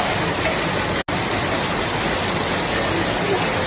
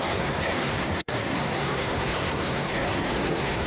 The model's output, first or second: second